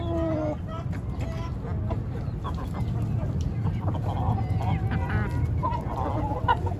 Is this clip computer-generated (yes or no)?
no